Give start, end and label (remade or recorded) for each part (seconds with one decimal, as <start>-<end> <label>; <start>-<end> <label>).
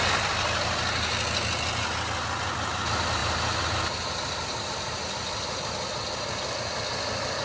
0.0-7.4 recorded